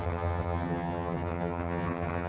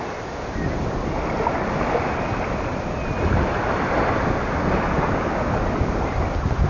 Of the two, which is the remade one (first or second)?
first